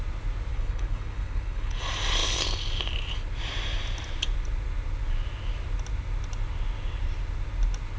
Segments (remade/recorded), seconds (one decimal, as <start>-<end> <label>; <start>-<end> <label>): 0.0-0.5 recorded; 0.5-1.8 remade; 1.8-8.0 recorded